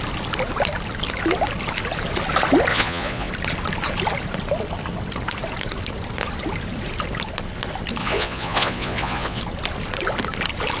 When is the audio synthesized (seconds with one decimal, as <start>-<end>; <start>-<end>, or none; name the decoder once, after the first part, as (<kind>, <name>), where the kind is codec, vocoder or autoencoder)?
2.7-3.3 (vocoder, Vocos); 8.0-9.4